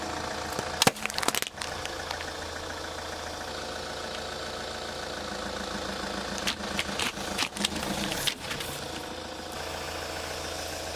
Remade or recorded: recorded